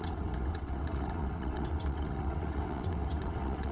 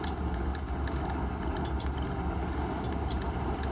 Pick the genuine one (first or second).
second